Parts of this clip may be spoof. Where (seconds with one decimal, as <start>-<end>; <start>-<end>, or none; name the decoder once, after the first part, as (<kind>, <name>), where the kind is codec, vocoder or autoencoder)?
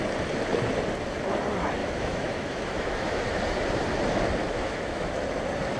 1.8-3.4 (autoencoder, DAC-VAE); 4.4-5.2